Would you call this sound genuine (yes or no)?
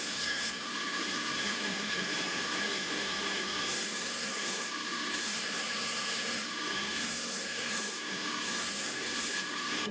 no